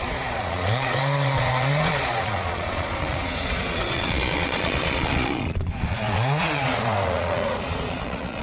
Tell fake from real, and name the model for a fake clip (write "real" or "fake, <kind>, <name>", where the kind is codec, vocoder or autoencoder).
fake, vocoder, Vocos